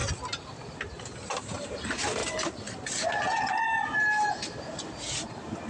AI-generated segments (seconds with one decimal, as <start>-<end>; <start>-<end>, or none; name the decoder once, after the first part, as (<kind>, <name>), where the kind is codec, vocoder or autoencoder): 1.4-2.2 (vocoder, BigVGAN v2); 4.3-5.7